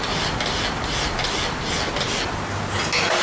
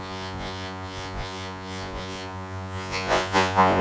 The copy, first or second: second